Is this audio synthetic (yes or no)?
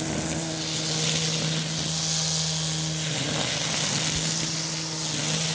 no